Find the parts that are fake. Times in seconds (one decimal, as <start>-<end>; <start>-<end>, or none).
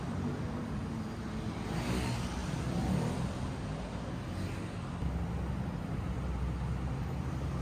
none